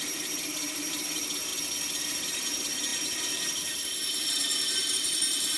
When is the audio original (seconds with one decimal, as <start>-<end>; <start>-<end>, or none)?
1.5-2.0